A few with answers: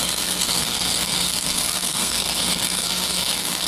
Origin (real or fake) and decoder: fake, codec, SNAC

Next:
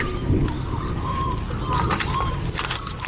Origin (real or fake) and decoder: real